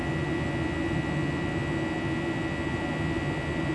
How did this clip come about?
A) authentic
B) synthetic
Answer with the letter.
A